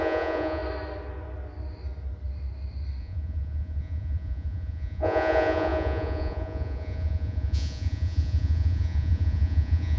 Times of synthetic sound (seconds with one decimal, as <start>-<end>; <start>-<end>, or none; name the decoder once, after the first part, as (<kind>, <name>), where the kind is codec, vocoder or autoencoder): 0.0-0.6 (vocoder, Vocos); 3.0-10.0